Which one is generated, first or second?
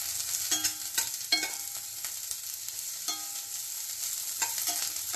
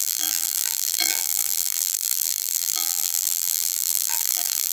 second